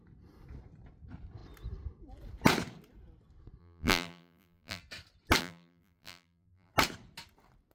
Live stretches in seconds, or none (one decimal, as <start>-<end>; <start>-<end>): 0.0-3.6; 4.8-5.4; 6.7-7.7